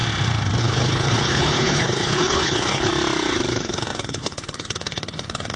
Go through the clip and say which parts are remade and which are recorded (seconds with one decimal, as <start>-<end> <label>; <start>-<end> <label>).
0.0-0.6 recorded; 0.6-2.9 remade; 2.9-3.5 recorded; 3.5-5.6 remade